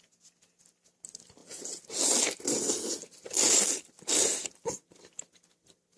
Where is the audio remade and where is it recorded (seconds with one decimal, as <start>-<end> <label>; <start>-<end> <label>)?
0.0-6.0 recorded